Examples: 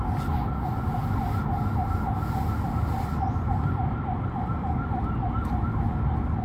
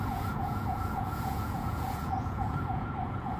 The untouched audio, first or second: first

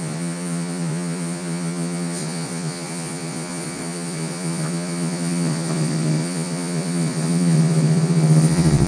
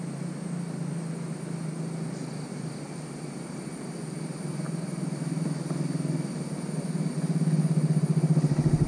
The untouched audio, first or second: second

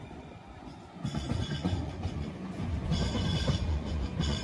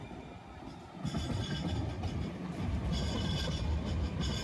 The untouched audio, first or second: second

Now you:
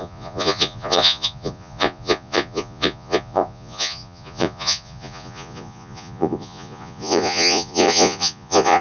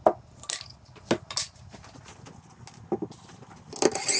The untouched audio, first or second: second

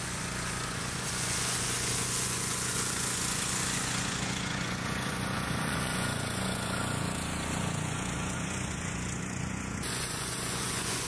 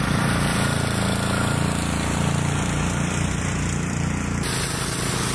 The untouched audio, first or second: second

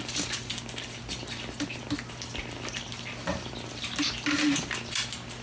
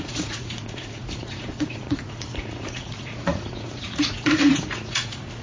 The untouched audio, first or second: first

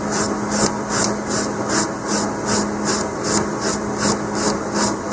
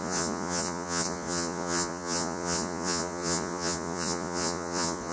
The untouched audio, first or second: first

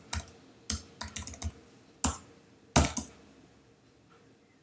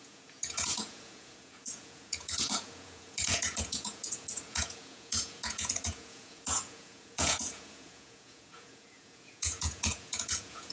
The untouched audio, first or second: first